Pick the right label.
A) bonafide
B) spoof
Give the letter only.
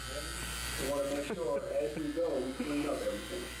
A